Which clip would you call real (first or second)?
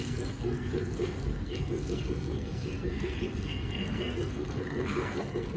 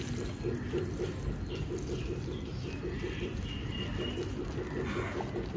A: second